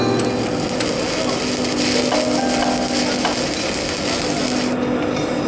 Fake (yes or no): no